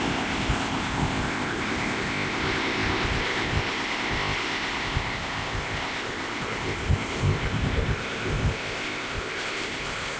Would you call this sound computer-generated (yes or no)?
yes